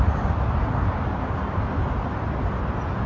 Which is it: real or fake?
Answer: real